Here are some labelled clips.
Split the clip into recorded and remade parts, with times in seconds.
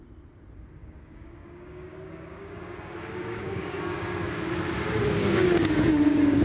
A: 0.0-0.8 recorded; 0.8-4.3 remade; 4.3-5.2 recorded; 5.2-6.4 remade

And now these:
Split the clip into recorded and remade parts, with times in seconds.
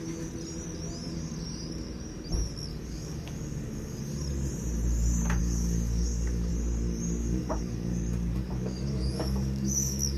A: 0.0-2.7 recorded; 2.7-4.0 remade; 4.0-5.4 recorded; 5.4-6.5 remade; 6.5-7.2 recorded; 7.2-10.2 remade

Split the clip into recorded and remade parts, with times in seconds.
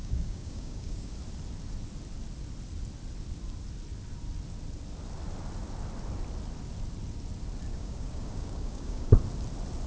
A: 0.0-1.1 remade; 1.1-7.7 recorded; 7.7-9.1 remade; 9.1-9.9 recorded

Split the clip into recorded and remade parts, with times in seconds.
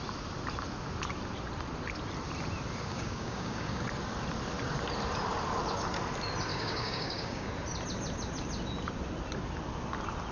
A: 0.0-2.9 recorded; 2.9-3.8 remade; 3.8-6.5 recorded; 6.5-7.5 remade; 7.5-10.3 recorded